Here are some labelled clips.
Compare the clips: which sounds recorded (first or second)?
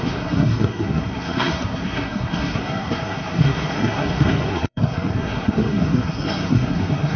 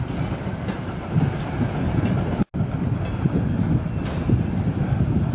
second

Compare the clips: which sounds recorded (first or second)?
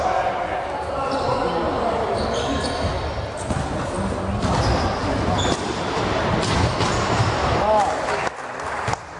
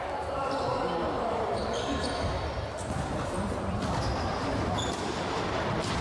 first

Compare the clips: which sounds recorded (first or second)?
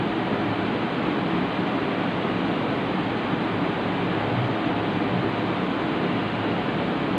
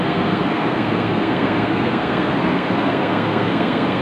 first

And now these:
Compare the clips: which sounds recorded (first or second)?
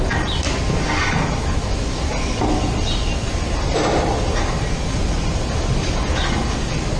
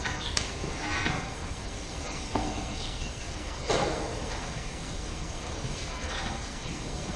first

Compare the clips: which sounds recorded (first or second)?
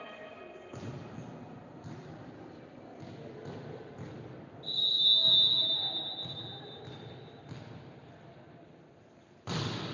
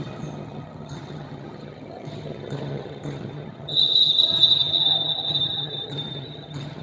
first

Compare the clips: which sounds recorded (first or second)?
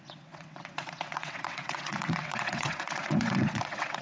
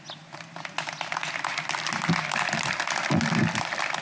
second